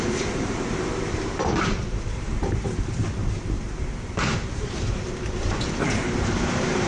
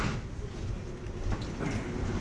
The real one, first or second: second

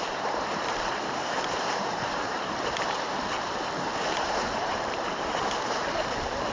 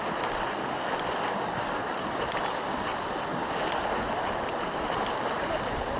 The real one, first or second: second